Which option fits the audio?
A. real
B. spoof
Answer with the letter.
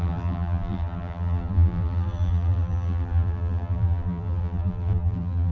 B